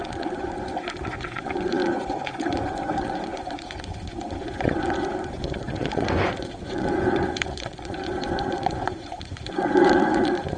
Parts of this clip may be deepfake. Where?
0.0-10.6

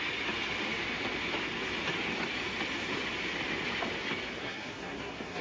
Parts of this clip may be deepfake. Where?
4.4-5.4

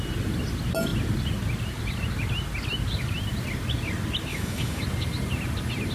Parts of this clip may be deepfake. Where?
4.3-4.8

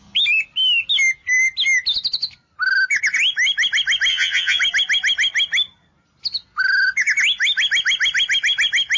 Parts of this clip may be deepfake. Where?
4.1-4.6

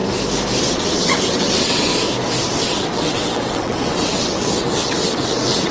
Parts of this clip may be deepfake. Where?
0.6-1.9; 2.6-5.7

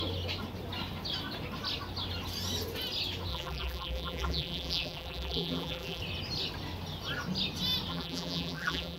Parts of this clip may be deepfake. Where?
3.3-6.0; 7.9-9.0

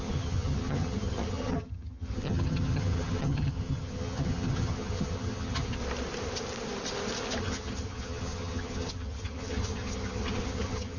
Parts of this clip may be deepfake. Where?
0.0-5.8; 7.4-11.0

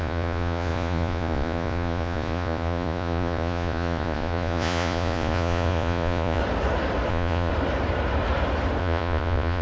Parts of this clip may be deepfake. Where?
0.0-6.4; 7.1-7.5; 8.8-9.6